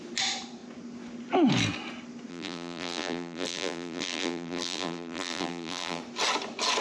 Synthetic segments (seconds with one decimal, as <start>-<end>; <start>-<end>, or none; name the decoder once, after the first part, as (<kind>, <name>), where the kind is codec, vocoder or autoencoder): 2.3-6.0 (vocoder, BigVGAN v2)